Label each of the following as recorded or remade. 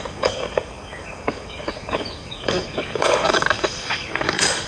remade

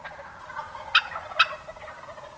recorded